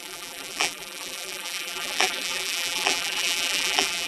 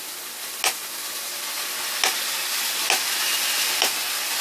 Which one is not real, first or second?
first